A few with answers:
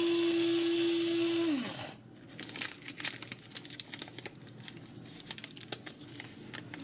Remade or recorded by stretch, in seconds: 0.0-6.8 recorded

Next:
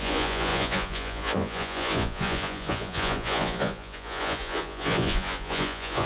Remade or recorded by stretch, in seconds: 0.0-6.1 remade

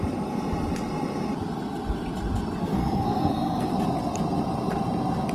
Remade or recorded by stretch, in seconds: 0.0-2.6 recorded; 2.6-3.7 remade; 3.7-5.3 recorded